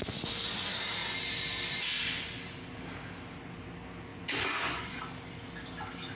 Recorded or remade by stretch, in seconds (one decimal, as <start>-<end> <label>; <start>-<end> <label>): 0.0-4.1 recorded; 4.1-5.0 remade; 5.0-6.2 recorded